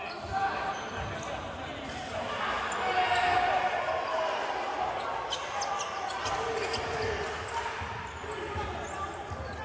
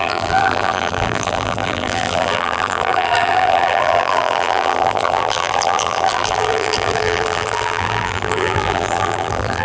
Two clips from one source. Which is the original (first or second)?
first